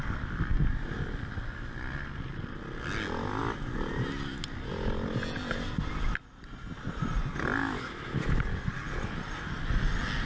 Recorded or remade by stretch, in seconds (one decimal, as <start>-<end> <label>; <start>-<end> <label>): 0.0-7.6 recorded; 7.6-8.4 remade; 8.4-10.3 recorded